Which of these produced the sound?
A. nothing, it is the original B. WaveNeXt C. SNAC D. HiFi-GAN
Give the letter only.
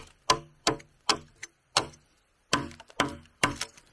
A